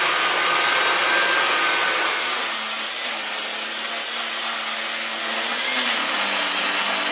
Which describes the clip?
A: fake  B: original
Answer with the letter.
B